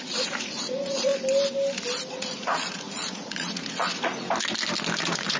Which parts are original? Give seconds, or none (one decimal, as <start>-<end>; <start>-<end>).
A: 1.1-2.1; 4.1-5.0